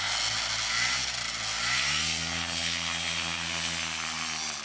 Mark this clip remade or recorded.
recorded